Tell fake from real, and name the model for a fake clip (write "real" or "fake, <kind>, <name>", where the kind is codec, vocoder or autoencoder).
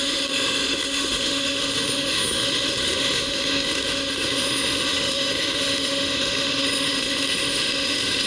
fake, autoencoder, DAC-VAE